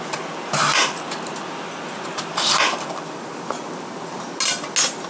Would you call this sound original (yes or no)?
yes